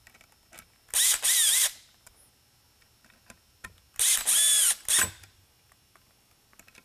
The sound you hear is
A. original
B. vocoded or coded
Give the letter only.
A